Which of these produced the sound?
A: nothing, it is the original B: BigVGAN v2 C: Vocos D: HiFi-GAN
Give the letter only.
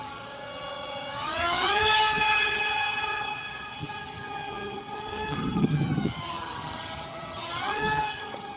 D